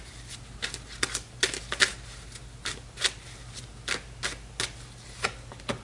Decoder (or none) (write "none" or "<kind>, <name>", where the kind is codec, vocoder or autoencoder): none